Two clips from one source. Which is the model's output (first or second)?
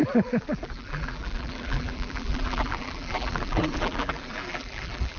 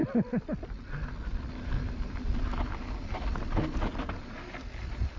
first